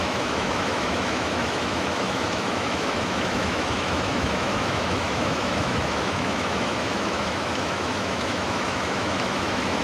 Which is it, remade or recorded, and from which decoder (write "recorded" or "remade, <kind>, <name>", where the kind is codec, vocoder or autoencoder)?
remade, autoencoder, DAC-VAE